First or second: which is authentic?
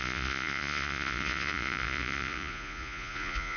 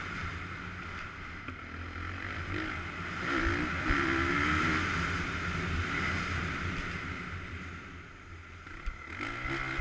second